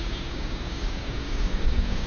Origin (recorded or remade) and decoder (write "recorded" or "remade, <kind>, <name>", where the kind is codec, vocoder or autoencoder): remade, codec, DAC